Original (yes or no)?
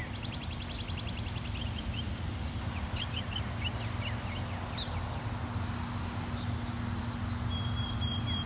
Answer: yes